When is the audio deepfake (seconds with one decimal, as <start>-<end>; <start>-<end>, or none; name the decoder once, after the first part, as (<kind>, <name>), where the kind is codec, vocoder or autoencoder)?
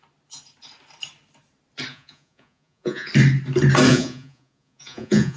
1.9-3.1 (vocoder, Vocos); 3.9-5.4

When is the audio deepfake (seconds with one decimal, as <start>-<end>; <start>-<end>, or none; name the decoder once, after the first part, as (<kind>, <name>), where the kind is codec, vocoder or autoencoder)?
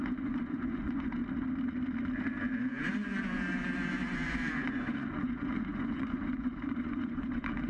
0.0-1.2 (vocoder, Vocos); 2.6-7.7